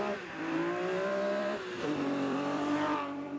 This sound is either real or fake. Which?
fake